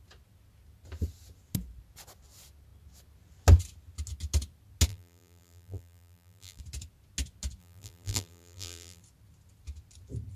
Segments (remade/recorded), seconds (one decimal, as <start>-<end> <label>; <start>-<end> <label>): 0.0-4.9 recorded; 4.9-6.6 remade; 6.6-7.6 recorded; 7.6-9.0 remade; 9.0-10.4 recorded